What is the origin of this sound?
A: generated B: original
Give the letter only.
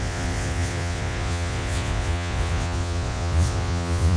A